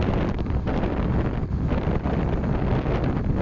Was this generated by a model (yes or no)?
no